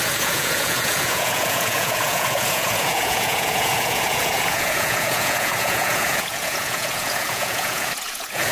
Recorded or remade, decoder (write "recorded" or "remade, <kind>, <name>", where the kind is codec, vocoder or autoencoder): remade, vocoder, Vocos